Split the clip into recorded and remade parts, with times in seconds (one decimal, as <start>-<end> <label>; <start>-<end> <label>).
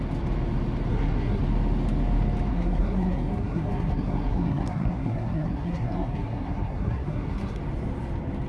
0.0-0.9 recorded; 0.9-1.4 remade; 1.4-2.5 recorded; 2.5-7.6 remade; 7.6-8.5 recorded